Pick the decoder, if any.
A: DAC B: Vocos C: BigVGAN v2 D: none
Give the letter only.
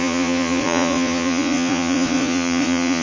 B